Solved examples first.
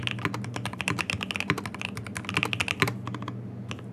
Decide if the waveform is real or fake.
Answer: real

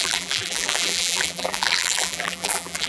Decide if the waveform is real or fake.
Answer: fake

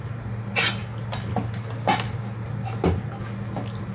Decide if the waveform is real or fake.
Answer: real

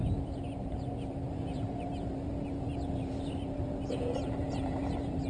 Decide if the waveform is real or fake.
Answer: fake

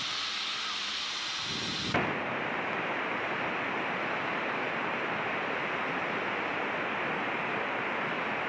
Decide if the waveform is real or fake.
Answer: real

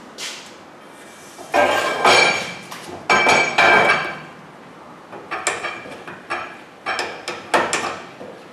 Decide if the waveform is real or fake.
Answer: real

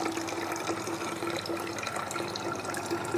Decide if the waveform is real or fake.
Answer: real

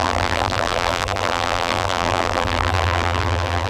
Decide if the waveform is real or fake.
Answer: fake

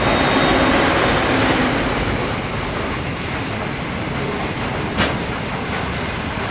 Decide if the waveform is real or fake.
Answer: real